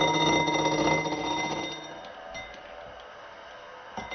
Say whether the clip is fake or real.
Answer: real